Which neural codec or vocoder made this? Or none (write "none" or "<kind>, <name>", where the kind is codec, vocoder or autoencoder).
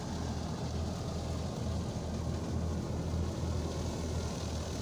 none